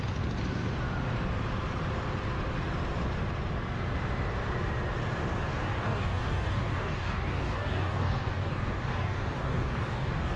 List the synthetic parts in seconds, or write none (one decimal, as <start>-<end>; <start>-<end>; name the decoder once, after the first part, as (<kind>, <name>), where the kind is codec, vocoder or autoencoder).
5.5-10.4 (codec, DAC)